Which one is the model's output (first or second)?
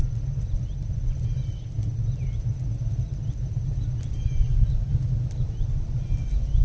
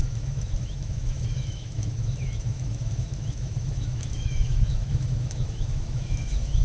second